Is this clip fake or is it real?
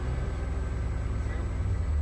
real